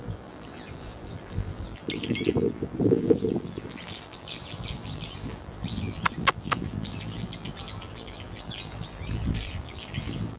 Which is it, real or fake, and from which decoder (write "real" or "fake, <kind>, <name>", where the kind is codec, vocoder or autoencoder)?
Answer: fake, vocoder, BigVGAN v2